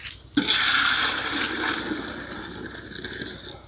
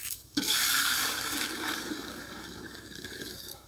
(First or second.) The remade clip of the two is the second